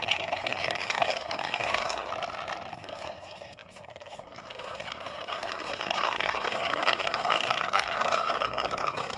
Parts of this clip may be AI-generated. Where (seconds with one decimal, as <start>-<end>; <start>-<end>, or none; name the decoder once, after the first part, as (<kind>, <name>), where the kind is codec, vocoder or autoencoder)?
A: 0.0-2.1 (codec, SNAC); 2.7-9.2

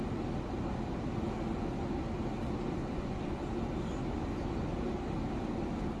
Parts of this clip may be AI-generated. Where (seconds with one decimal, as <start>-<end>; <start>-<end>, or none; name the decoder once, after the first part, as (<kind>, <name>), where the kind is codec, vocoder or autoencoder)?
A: 2.8-3.4 (vocoder, Vocos)

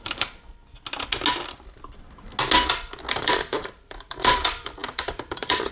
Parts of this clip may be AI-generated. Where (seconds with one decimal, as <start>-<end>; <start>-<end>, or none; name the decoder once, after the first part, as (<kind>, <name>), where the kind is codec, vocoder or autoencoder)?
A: 0.0-0.6 (vocoder, BigVGAN v2); 3.1-5.7

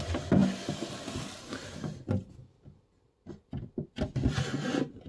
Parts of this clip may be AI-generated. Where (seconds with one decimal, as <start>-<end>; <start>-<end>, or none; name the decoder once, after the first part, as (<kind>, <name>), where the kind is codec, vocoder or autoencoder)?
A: none

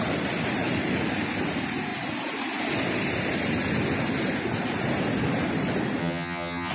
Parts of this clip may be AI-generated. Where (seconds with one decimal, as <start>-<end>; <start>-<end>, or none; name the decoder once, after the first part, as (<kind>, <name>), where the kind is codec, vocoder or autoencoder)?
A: 6.0-6.7 (vocoder, HiFi-GAN)

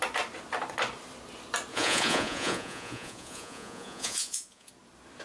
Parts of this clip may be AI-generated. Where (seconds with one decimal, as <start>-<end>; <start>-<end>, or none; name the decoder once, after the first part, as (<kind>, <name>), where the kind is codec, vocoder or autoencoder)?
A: 1.7-4.7 (vocoder, Vocos)

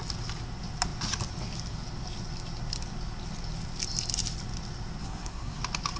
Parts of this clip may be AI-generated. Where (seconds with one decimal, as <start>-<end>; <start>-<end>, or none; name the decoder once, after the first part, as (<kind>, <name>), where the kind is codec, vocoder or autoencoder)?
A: 5.0-5.6 (codec, SNAC)